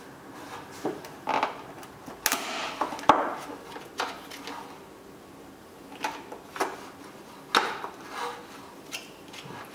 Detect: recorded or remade recorded